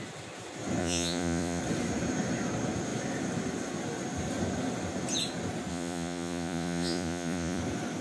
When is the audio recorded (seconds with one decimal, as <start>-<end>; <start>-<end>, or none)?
0.0-0.8; 1.6-5.7; 7.6-8.0